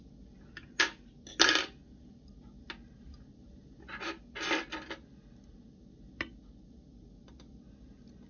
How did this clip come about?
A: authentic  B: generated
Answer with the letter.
A